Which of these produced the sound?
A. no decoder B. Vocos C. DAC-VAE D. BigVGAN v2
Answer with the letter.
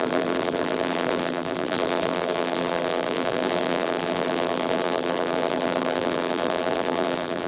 D